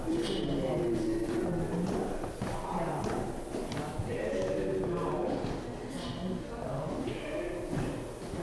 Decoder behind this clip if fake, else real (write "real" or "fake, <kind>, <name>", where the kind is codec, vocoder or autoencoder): real